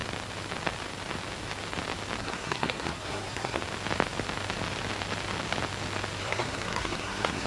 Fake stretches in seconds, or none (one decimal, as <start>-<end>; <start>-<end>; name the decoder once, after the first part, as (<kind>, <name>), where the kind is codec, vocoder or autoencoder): 2.2-3.6 (codec, SNAC); 6.2-7.5